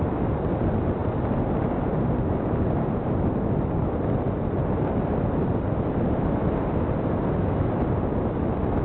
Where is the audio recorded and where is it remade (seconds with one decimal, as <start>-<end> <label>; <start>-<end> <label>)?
0.0-8.8 recorded